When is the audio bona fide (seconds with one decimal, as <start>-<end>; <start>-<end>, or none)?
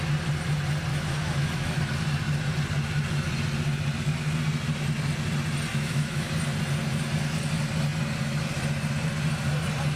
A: 0.0-0.9; 1.8-5.7; 6.3-10.0